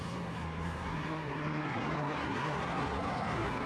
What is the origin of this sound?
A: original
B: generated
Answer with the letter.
B